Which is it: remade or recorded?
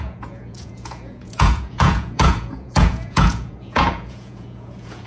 remade